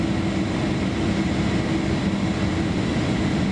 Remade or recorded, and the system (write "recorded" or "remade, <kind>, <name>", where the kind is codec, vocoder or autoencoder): recorded